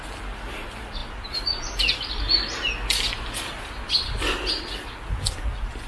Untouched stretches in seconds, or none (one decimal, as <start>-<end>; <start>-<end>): 0.0-5.9